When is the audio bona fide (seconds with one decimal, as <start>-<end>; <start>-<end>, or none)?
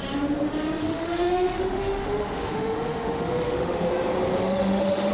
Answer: 0.0-0.8; 3.9-4.4